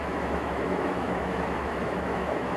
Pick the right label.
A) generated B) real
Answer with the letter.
A